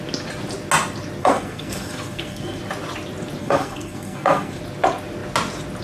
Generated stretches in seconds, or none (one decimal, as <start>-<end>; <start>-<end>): 1.2-2.6; 3.4-4.6